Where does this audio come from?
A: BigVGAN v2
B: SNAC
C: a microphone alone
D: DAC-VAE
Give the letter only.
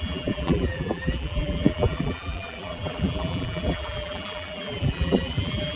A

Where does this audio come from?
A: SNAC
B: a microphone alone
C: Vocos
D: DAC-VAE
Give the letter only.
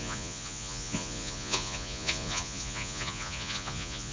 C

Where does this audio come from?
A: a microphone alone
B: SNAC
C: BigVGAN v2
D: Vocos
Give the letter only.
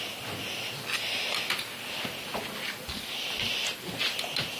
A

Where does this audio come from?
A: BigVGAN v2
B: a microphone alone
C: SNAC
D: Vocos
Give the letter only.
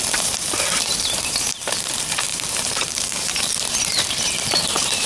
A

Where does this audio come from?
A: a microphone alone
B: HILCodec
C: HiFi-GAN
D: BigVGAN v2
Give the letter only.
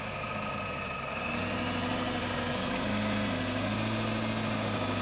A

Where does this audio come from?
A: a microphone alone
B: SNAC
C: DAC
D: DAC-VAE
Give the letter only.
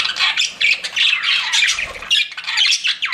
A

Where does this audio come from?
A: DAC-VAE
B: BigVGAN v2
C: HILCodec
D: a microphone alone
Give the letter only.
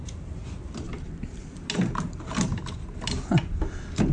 D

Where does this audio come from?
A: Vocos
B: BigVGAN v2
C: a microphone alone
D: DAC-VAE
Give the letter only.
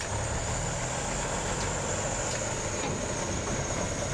C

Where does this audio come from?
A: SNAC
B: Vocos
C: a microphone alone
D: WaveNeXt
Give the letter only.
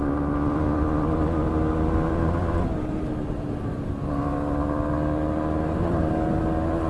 C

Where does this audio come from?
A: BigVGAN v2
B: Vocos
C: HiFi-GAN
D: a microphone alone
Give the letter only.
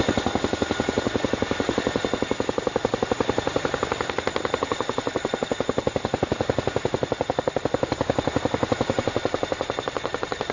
D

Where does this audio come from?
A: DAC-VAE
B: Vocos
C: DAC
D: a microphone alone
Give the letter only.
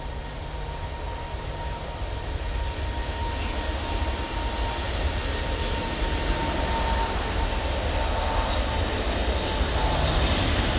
D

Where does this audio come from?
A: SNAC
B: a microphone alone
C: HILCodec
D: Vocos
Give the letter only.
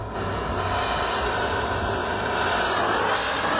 B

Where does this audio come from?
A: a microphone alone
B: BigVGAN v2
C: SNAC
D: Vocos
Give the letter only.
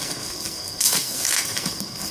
C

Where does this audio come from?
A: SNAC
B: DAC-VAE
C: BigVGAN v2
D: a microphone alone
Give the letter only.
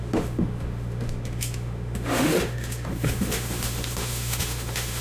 B